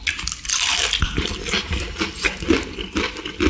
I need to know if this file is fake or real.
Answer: real